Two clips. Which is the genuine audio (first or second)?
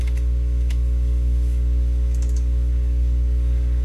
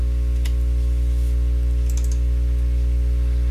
second